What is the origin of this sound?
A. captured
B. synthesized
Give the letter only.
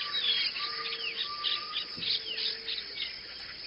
A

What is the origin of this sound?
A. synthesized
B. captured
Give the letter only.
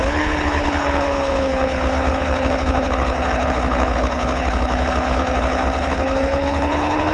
A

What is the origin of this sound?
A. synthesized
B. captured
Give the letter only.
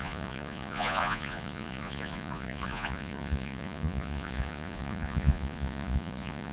A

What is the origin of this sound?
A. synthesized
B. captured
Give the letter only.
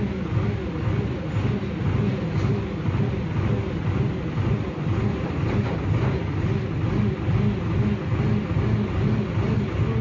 B